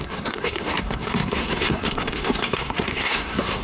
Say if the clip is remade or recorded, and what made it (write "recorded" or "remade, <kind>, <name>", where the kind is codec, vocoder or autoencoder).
remade, codec, SNAC